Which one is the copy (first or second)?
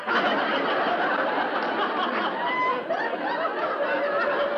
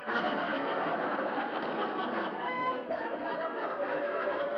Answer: second